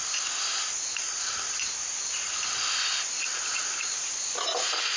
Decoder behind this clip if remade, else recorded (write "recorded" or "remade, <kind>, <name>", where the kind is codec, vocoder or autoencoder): recorded